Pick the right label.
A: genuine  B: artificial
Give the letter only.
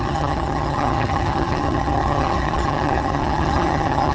B